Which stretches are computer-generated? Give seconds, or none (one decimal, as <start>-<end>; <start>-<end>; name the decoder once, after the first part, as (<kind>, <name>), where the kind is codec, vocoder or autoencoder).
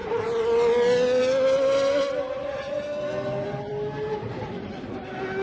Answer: none